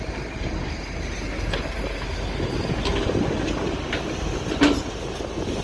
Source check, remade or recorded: recorded